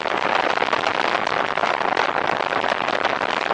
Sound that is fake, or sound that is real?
fake